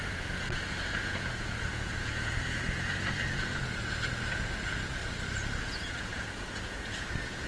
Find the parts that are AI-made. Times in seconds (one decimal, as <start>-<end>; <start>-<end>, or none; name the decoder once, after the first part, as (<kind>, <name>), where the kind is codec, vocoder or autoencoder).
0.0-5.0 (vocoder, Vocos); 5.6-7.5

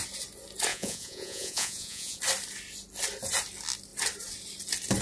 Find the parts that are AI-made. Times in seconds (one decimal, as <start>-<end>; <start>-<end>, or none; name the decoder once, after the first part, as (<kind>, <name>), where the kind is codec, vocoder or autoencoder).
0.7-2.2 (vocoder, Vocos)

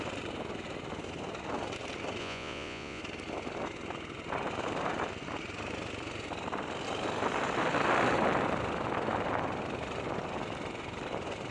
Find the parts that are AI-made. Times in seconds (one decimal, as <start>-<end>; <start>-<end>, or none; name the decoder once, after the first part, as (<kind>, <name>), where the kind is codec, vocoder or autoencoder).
2.2-3.0 (vocoder, Vocos)

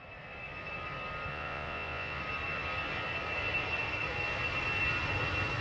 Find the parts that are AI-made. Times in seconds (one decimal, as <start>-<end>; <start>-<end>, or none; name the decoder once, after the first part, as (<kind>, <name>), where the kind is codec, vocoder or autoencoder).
1.3-2.2 (vocoder, Vocos)

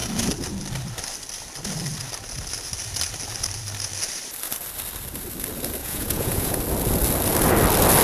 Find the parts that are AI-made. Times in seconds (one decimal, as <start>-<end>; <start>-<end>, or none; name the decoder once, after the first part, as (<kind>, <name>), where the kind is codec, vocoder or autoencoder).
5.8-6.6 (vocoder, Vocos)

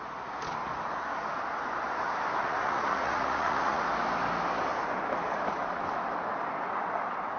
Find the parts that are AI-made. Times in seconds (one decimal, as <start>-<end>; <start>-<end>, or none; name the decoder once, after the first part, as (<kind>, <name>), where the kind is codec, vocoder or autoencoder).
2.4-3.8 (vocoder, Vocos)